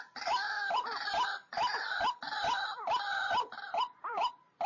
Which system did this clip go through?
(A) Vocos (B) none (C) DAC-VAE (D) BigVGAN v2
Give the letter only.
D